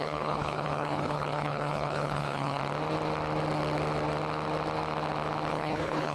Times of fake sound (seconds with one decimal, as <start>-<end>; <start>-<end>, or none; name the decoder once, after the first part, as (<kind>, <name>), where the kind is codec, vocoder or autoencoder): 0.0-2.6 (codec, HILCodec); 5.5-6.1